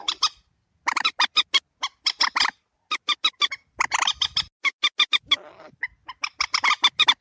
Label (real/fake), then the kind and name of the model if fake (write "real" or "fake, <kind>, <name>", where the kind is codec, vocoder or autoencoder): real